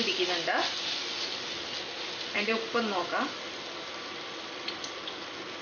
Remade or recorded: recorded